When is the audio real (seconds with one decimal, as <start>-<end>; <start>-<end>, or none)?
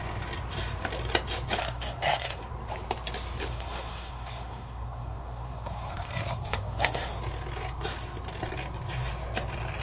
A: 0.0-1.6; 2.5-3.5; 7.2-9.8